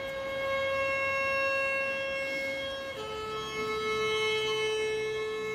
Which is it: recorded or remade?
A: recorded